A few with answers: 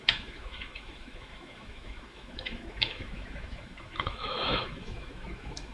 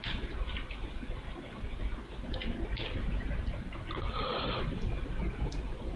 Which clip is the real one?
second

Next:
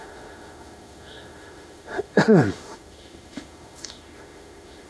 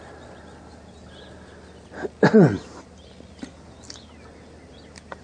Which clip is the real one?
second